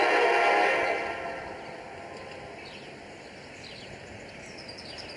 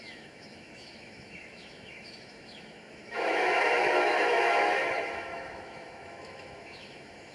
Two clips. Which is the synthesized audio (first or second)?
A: second